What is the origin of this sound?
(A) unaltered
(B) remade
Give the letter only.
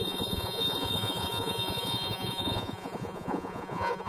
B